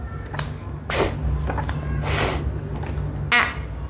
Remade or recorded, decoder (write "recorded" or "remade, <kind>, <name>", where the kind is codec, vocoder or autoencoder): recorded